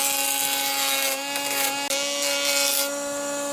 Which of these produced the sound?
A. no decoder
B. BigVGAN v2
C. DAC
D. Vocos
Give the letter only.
A